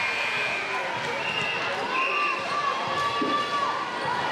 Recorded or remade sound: recorded